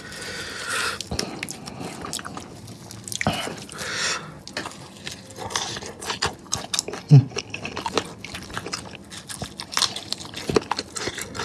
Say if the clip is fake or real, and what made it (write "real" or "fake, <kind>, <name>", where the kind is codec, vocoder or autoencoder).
real